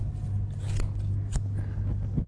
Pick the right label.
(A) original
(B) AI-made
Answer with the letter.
A